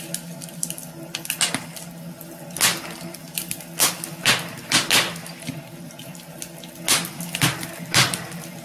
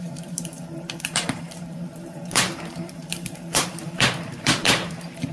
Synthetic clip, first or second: second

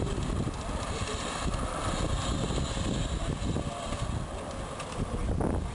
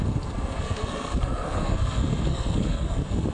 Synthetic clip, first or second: second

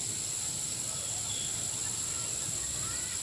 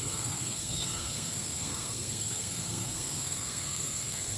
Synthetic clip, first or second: second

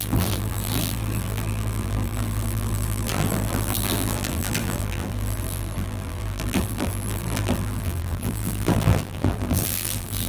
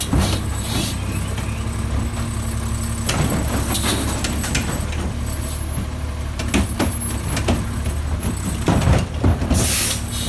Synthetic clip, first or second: first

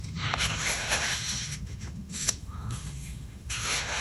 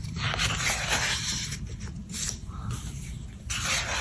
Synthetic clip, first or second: first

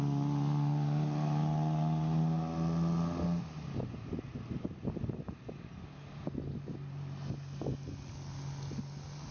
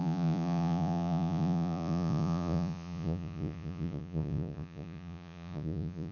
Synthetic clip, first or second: second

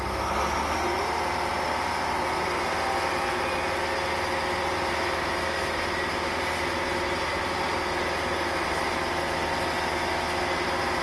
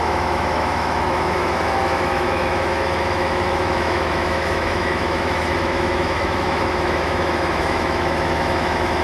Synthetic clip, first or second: second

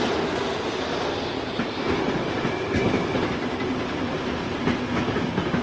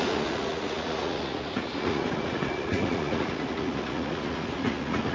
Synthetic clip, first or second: second